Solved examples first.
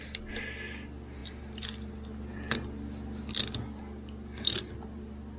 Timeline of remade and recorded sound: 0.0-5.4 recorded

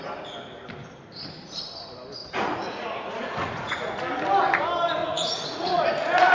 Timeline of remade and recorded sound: 0.0-2.2 recorded; 2.2-4.0 remade; 4.0-5.0 recorded; 5.0-5.8 remade; 5.8-6.3 recorded